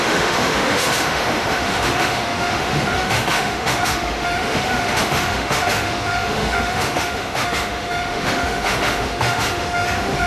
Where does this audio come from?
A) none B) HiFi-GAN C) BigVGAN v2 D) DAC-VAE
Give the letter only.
D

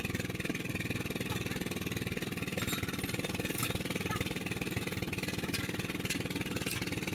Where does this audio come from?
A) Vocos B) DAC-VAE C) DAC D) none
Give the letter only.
D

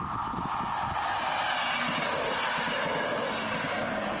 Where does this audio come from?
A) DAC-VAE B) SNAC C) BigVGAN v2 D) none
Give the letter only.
D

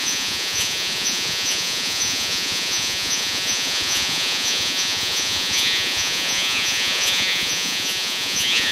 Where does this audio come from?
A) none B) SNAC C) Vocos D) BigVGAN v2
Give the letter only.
C